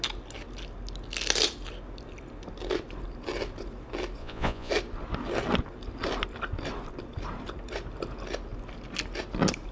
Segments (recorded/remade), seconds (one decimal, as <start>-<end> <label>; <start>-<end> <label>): 0.0-4.2 recorded; 4.2-4.7 remade; 4.7-9.7 recorded